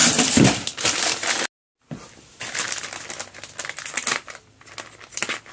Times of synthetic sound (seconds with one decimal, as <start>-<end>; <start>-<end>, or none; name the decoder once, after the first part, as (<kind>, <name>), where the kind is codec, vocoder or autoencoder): none